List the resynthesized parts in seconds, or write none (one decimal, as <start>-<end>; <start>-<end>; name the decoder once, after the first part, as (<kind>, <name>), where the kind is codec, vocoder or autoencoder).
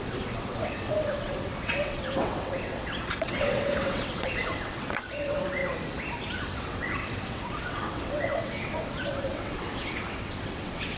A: 0.0-5.6 (vocoder, WaveNeXt); 6.4-11.0